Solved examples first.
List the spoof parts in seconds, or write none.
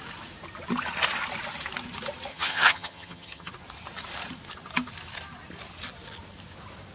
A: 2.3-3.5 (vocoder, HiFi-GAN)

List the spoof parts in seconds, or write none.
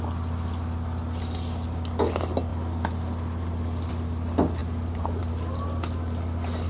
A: none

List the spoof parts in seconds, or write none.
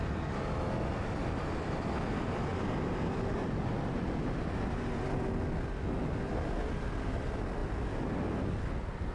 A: none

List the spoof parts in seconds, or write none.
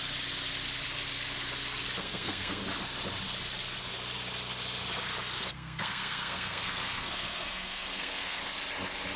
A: 2.0-2.6 (codec, SNAC); 5.4-8.4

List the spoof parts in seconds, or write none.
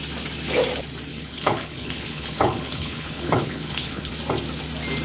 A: 1.1-4.1 (codec, HILCodec)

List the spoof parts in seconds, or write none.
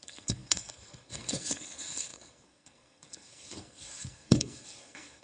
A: 0.0-5.2 (codec, SNAC)